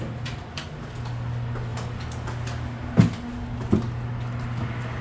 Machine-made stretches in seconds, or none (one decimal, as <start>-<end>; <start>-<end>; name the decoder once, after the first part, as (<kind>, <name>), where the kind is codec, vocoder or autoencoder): none